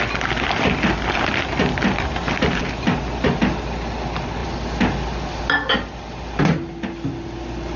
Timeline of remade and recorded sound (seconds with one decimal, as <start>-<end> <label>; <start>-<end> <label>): 0.0-7.8 recorded